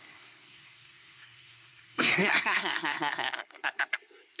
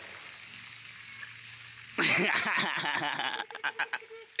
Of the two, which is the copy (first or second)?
first